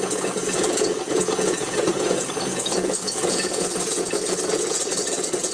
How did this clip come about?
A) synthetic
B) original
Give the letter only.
A